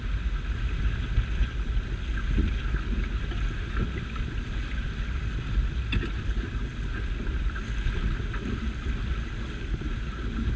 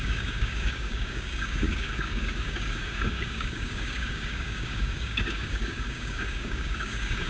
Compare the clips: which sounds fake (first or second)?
second